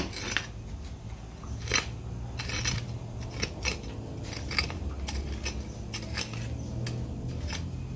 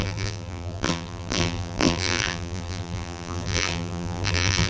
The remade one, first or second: second